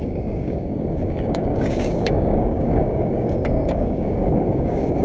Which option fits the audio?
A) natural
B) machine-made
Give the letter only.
B